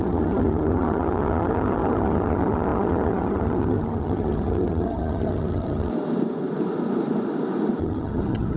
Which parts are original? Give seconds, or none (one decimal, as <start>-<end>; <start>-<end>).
5.9-7.8